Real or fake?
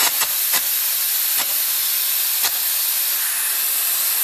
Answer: real